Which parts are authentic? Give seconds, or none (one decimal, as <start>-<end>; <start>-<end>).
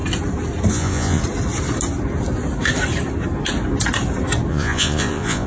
0.0-0.7; 1.2-4.5